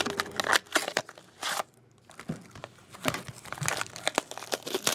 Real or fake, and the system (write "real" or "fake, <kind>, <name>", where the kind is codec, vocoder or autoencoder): real